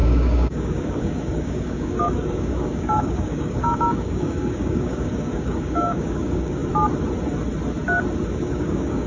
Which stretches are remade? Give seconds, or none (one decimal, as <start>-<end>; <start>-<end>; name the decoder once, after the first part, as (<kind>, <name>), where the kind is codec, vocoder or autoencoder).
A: 0.0-6.6 (codec, DAC); 8.3-9.1